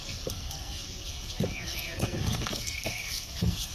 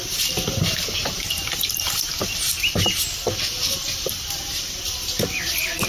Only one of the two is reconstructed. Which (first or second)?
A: first